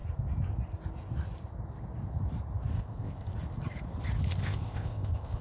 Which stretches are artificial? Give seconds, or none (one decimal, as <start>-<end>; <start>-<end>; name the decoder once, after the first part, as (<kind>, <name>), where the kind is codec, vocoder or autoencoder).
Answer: 2.7-3.3 (codec, ZipCodec); 4.4-5.4